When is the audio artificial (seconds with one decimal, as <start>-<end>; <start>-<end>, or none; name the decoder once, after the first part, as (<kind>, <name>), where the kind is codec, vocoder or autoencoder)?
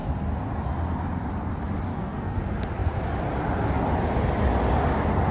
1.9-2.4 (codec, SNAC)